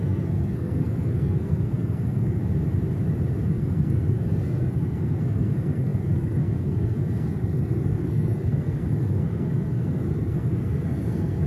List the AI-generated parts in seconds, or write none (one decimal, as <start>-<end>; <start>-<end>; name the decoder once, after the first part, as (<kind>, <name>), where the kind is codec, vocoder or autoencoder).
0.0-2.4 (codec, SNAC); 3.5-11.5